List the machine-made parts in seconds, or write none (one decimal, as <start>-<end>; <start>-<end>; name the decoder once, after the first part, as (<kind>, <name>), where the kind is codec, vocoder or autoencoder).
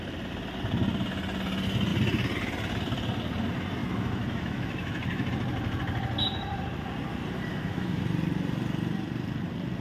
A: 3.8-5.3 (autoencoder, DAC-VAE); 7.5-8.0